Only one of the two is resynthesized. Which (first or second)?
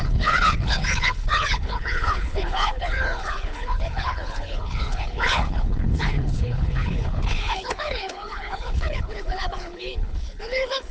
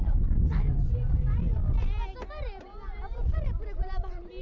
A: first